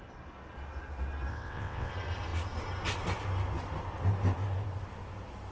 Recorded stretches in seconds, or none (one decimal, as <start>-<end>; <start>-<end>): 0.0-1.3; 1.9-5.5